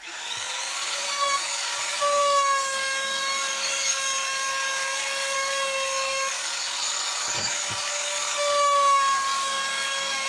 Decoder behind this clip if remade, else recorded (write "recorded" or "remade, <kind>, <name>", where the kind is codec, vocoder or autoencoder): remade, codec, DAC